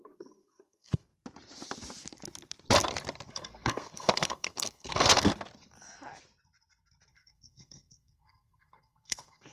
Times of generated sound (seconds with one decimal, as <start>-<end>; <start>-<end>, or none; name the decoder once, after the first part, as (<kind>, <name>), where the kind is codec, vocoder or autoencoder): 0.0-1.1 (codec, SNAC); 3.3-5.3; 7.1-9.5